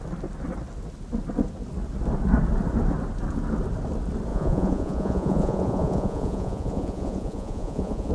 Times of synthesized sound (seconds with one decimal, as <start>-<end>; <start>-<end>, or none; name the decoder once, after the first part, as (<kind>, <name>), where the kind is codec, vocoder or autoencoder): 4.3-8.1 (vocoder, Vocos)